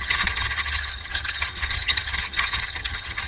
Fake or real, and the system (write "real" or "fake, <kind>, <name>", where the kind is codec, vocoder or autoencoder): fake, vocoder, HiFi-GAN